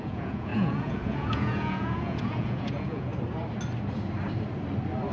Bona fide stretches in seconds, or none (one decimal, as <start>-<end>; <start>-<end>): 3.1-5.1